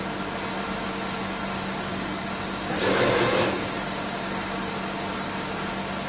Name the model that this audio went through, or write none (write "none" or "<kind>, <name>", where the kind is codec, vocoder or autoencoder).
none